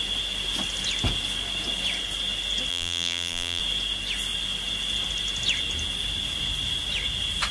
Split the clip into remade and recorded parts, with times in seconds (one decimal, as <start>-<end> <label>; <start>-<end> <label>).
0.0-2.7 recorded; 2.7-3.6 remade; 3.6-7.5 recorded